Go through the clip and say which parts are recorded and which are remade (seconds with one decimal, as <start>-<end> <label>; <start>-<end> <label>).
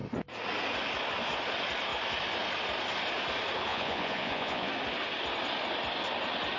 0.0-3.7 recorded; 3.7-4.7 remade; 4.7-6.6 recorded